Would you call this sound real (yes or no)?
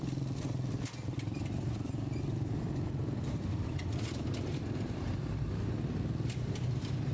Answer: no